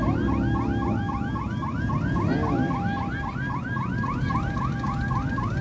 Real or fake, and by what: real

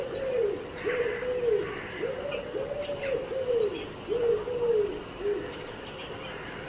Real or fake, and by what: real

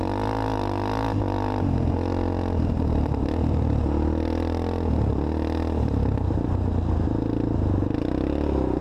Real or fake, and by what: real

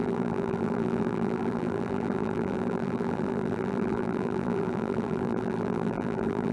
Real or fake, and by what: fake, vocoder, BigVGAN v2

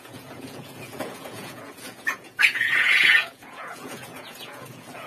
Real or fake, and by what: fake, vocoder, Vocos